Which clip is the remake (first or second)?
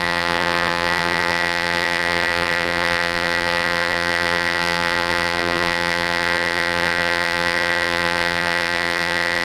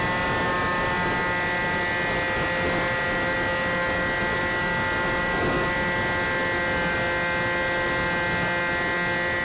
first